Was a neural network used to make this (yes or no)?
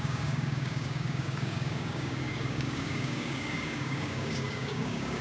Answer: yes